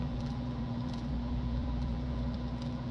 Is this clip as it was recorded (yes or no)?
no